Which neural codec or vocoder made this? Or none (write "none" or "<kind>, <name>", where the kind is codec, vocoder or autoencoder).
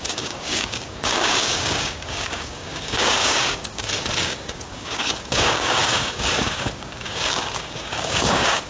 codec, DAC